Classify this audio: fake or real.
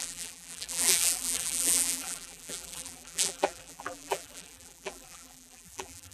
fake